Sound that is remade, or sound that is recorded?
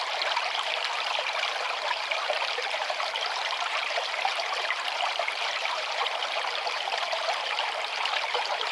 remade